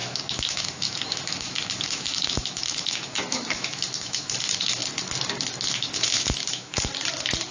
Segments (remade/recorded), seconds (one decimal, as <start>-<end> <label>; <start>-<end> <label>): 0.0-4.8 remade; 4.8-5.7 recorded; 5.7-6.9 remade; 6.9-7.5 recorded